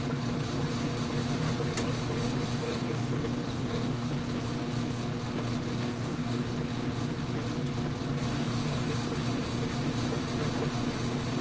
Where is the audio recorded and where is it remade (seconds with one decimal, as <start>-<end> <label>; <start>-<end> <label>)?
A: 0.0-2.6 recorded; 2.6-4.1 remade; 4.1-5.8 recorded; 5.8-6.5 remade; 6.5-8.3 recorded; 8.3-8.9 remade; 8.9-11.4 recorded